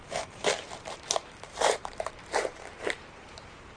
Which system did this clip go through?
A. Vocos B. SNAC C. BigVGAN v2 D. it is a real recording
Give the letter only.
C